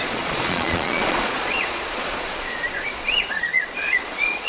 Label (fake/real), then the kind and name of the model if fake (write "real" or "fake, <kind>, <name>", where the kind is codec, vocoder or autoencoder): fake, vocoder, Vocos